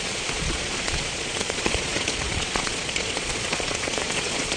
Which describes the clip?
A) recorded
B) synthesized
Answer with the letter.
B